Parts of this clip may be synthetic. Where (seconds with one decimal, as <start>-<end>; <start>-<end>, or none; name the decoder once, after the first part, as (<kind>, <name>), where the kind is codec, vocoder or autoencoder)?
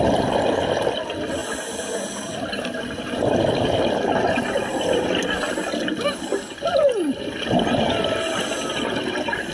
none